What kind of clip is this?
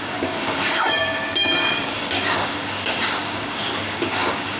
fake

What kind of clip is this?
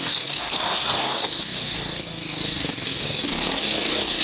fake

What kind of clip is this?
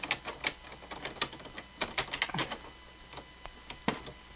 real